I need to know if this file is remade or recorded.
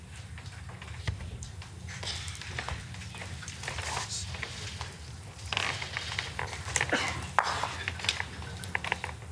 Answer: recorded